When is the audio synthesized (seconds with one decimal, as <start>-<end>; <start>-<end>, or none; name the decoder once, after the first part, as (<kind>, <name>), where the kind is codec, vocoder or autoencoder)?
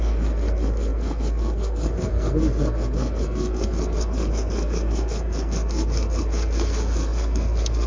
0.0-7.9 (codec, SNAC)